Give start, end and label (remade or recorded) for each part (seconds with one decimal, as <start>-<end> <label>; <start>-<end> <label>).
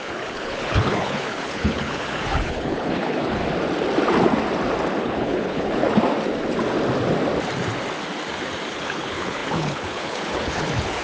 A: 0.0-3.4 remade; 3.4-5.0 recorded; 5.0-5.8 remade; 5.8-8.7 recorded; 8.7-11.0 remade